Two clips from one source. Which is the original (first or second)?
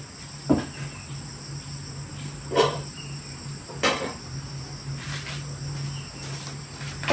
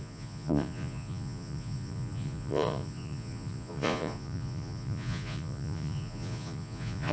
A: first